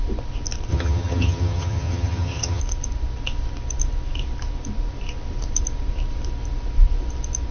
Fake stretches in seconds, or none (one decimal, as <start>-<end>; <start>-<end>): 0.7-2.6